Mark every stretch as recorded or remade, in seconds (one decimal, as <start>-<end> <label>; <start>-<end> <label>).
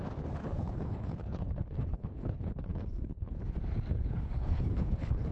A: 0.0-0.4 recorded; 0.4-3.4 remade; 3.4-3.9 recorded; 3.9-5.3 remade